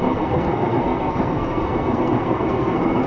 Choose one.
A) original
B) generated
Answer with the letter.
B